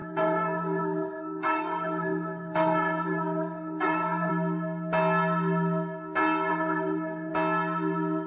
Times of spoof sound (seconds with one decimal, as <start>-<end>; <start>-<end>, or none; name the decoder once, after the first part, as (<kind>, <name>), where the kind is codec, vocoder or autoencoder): 0.0-4.3 (codec, SNAC); 6.5-7.3